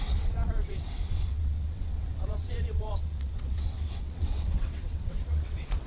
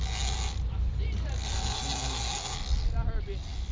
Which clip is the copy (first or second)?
first